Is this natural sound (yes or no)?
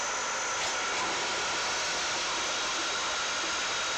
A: yes